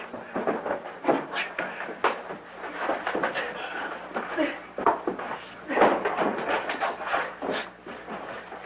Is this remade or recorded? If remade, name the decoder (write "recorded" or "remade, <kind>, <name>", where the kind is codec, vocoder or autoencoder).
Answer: recorded